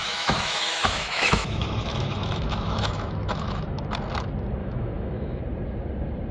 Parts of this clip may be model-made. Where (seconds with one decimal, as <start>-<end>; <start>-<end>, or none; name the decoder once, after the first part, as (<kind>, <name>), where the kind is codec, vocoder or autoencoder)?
0.0-3.8 (autoencoder, DAC-VAE); 4.6-5.4